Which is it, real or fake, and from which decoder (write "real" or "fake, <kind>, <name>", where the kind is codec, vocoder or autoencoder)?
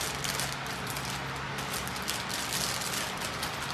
real